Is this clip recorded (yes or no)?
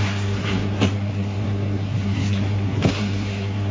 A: no